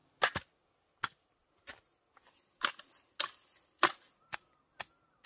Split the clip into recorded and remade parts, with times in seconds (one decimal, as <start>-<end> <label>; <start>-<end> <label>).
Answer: 0.0-5.3 recorded